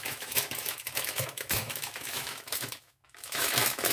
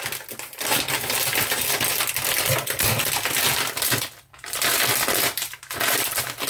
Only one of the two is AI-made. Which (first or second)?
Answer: first